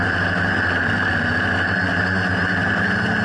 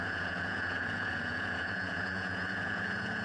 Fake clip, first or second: second